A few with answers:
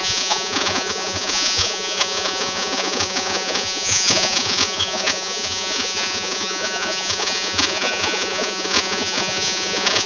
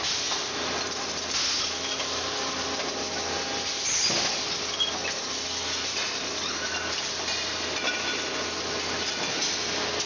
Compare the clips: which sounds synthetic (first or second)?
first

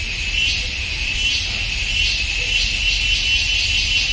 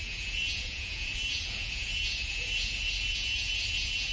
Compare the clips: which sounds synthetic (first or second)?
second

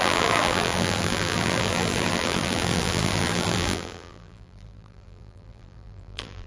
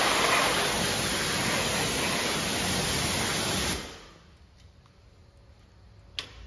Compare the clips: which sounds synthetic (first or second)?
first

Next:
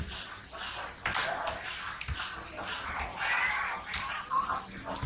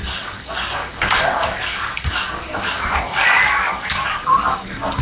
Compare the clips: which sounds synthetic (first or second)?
second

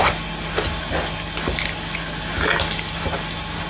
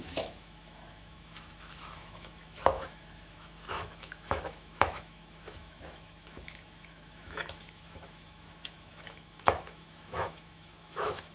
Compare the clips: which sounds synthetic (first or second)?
second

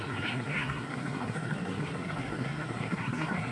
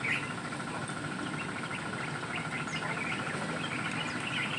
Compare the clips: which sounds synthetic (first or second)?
first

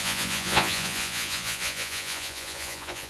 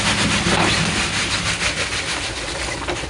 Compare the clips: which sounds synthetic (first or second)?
first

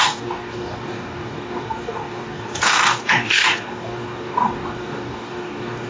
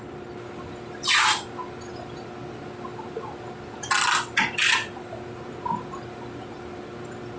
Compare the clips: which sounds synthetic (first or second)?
first